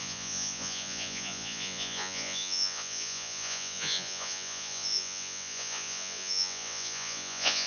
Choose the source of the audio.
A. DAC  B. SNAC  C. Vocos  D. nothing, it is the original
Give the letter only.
C